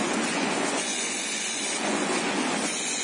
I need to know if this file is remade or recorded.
remade